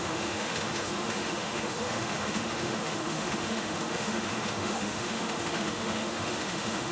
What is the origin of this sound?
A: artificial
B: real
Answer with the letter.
A